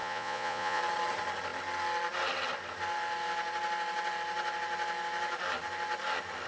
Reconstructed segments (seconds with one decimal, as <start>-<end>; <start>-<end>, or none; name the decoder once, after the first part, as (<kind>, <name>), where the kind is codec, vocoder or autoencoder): 0.0-0.8 (vocoder, Vocos)